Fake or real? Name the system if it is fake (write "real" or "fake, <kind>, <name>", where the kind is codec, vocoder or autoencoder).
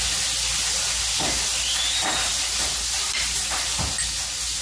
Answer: real